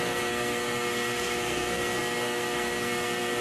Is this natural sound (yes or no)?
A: no